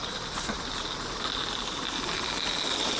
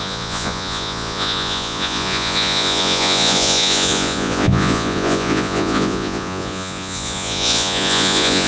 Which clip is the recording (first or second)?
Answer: first